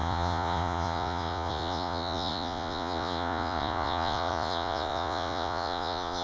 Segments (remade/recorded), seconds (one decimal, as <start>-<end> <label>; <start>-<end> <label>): 0.0-6.2 remade

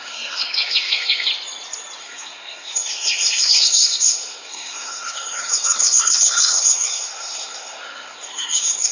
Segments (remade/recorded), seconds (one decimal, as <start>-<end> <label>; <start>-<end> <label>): 0.0-1.3 remade; 1.3-2.0 recorded; 2.0-8.9 remade

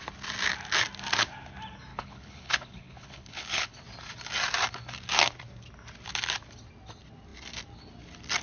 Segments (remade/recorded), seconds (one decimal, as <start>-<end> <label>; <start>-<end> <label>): 0.0-1.9 recorded; 1.9-3.8 remade; 3.8-8.4 recorded

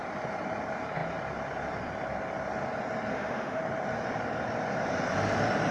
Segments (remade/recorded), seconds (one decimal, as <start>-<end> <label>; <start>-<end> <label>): 0.0-3.1 recorded; 3.1-3.6 remade; 3.6-5.7 recorded

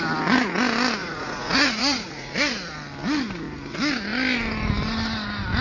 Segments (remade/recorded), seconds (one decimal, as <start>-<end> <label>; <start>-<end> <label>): 0.0-1.0 recorded; 1.0-2.3 remade; 2.3-5.6 recorded